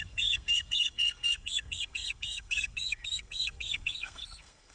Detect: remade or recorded remade